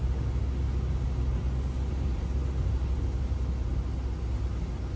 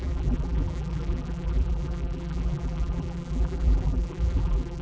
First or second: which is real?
first